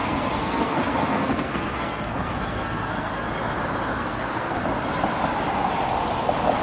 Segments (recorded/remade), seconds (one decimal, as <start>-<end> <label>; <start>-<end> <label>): 0.0-3.3 remade; 3.3-3.9 recorded; 3.9-4.6 remade; 4.6-6.6 recorded